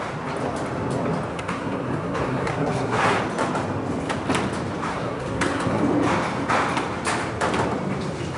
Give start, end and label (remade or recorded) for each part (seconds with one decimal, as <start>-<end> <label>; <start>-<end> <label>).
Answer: 0.0-1.3 recorded; 1.3-3.2 remade; 3.2-4.9 recorded; 4.9-5.8 remade; 5.8-8.4 recorded